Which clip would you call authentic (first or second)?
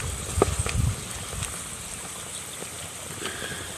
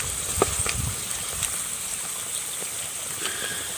first